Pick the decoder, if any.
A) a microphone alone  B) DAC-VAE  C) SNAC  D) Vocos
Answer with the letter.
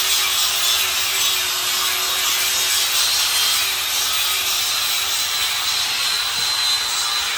A